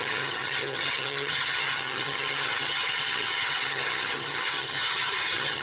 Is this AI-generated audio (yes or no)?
yes